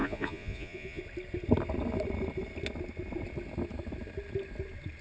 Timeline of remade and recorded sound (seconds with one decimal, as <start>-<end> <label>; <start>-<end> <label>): 0.0-1.0 remade; 1.0-5.0 recorded